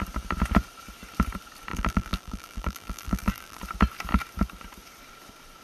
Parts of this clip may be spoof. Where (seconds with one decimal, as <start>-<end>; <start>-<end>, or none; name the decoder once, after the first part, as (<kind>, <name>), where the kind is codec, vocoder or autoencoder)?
1.7-3.6 (vocoder, BigVGAN v2)